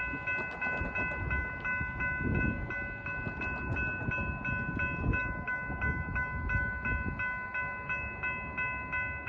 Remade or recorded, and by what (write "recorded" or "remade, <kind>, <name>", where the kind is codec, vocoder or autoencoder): recorded